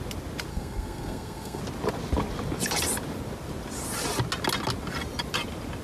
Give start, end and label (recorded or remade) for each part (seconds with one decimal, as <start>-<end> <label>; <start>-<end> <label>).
0.0-0.5 recorded; 0.5-1.6 remade; 1.6-5.8 recorded